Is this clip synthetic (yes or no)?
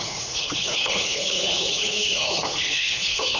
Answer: yes